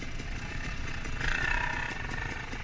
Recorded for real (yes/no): no